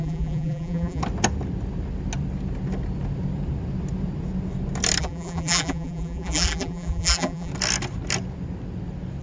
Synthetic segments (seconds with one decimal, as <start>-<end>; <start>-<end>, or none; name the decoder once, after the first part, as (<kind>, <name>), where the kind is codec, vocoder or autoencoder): 0.0-1.0 (vocoder, BigVGAN v2); 5.0-7.5